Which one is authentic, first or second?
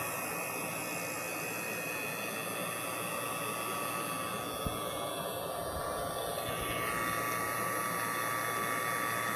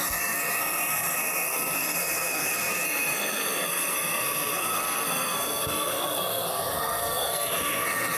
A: first